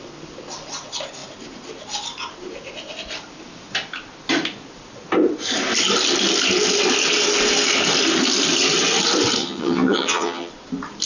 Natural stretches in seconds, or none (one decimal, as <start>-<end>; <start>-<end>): 0.0-9.4; 10.5-11.1